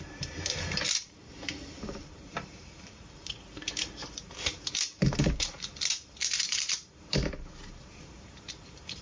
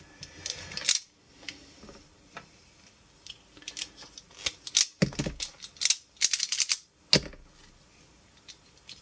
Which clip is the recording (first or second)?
second